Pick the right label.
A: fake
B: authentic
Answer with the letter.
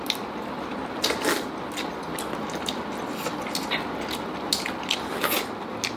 B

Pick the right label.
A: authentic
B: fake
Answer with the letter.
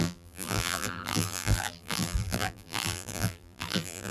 B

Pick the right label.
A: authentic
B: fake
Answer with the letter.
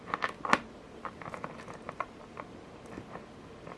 A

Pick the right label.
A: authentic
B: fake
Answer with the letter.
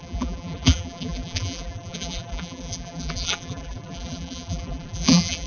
B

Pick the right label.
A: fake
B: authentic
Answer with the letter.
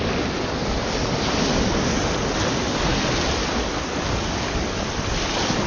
B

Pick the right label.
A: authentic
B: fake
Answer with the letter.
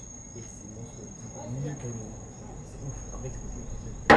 A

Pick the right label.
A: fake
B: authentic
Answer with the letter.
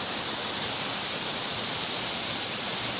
A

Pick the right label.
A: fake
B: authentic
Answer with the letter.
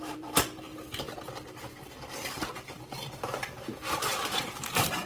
A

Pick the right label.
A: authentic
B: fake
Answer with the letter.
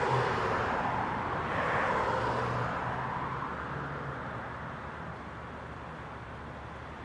B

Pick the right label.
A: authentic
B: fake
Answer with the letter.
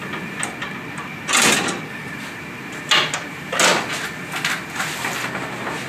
A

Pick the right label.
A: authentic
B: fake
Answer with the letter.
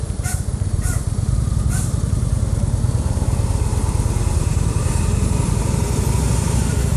B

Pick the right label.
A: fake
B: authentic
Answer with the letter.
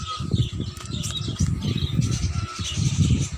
A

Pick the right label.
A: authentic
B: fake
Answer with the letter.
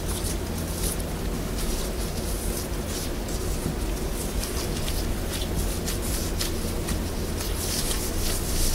A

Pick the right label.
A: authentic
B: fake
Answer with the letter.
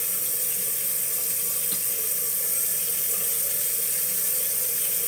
A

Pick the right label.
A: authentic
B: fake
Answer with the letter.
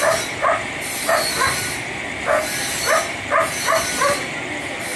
B